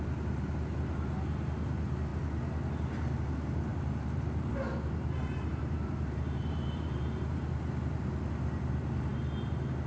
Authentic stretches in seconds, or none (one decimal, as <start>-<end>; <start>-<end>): 0.0-3.7; 7.5-9.9